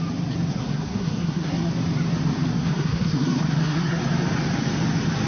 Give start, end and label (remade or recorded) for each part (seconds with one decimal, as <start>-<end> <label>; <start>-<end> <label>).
0.0-0.5 recorded; 0.5-1.7 remade; 1.7-2.5 recorded; 2.5-4.0 remade; 4.0-5.3 recorded